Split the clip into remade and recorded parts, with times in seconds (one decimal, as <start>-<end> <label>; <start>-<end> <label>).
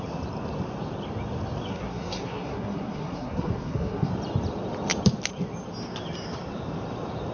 0.0-1.7 recorded; 1.7-4.1 remade; 4.1-7.3 recorded